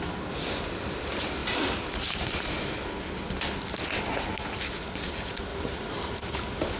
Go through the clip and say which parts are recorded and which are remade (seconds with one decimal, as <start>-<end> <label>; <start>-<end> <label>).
0.0-1.4 recorded; 1.4-2.4 remade; 2.4-5.5 recorded; 5.5-6.2 remade; 6.2-6.8 recorded